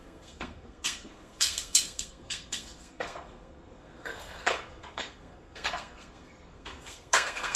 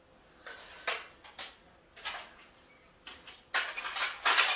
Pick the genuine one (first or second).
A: second